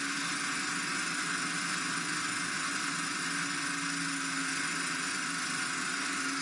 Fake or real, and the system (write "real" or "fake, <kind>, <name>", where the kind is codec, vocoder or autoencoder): real